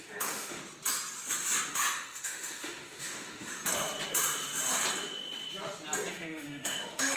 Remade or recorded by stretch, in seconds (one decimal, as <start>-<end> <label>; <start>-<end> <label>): 0.0-0.6 remade; 0.6-1.7 recorded; 1.7-3.6 remade; 3.6-6.1 recorded; 6.1-7.2 remade